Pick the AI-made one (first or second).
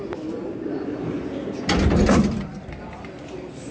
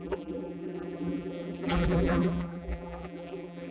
second